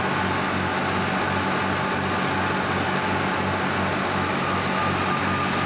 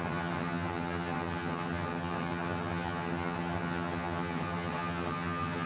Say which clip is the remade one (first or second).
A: second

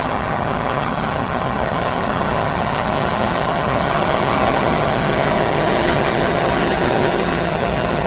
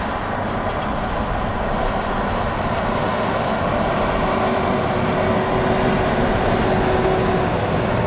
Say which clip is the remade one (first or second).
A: first